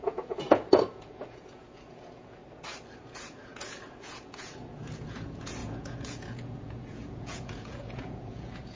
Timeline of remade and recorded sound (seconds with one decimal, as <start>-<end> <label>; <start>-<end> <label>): 0.0-2.4 remade; 2.4-3.0 recorded; 3.0-8.8 remade